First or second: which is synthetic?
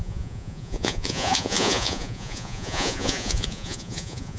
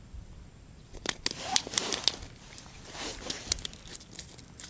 first